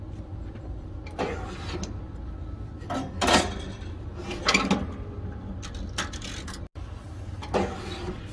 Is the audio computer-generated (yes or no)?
no